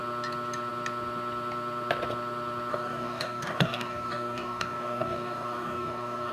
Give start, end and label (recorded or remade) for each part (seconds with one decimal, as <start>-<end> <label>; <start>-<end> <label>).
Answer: 0.0-2.7 recorded; 2.7-6.3 remade